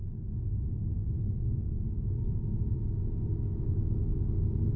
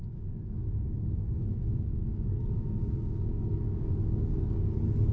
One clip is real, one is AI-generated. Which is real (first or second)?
first